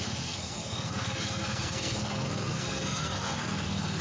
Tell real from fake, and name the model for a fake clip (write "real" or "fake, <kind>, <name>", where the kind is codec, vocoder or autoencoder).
fake, codec, SNAC